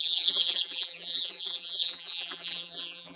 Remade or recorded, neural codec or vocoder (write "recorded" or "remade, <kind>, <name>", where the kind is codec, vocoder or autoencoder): remade, vocoder, BigVGAN v2